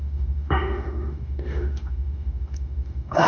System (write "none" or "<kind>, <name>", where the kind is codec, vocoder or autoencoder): autoencoder, DAC-VAE